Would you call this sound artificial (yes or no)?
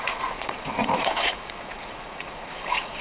yes